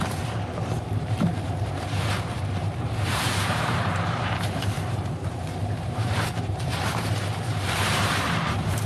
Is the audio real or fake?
fake